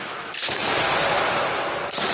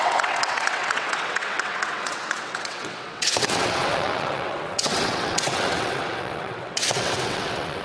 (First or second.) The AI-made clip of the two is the second